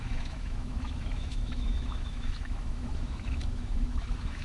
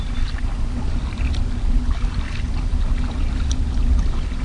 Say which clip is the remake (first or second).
first